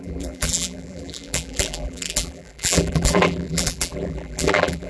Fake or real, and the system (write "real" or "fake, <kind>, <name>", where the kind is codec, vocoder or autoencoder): fake, vocoder, BigVGAN v2